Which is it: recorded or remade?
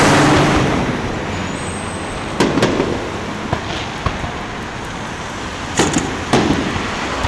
recorded